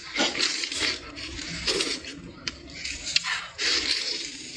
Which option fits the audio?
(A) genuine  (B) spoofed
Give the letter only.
B